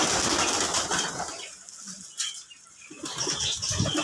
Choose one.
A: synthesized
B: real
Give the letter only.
B